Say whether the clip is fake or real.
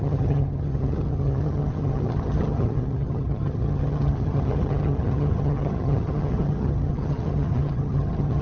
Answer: fake